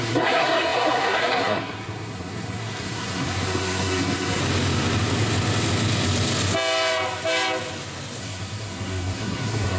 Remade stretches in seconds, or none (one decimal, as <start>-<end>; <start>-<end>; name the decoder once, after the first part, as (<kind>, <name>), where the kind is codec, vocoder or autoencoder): 0.0-4.4 (codec, SNAC); 8.2-9.8